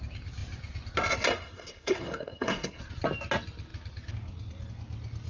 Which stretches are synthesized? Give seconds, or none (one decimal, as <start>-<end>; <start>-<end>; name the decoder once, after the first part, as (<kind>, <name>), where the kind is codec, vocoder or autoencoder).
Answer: 1.3-2.8 (codec, SNAC)